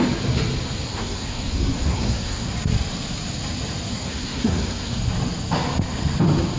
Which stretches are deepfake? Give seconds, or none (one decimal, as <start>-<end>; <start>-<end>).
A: 0.9-2.5; 3.9-5.0